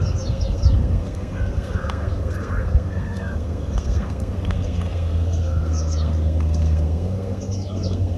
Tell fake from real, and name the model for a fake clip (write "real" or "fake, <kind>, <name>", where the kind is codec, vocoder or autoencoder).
fake, codec, SNAC